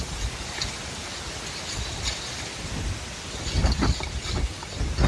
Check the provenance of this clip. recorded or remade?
recorded